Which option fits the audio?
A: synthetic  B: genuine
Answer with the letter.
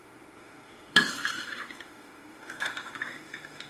A